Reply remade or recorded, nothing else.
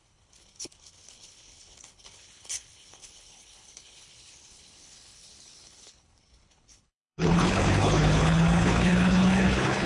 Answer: remade